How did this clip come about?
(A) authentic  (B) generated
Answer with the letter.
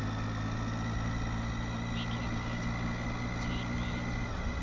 A